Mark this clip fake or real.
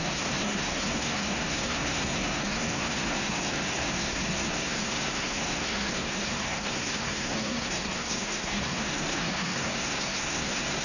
fake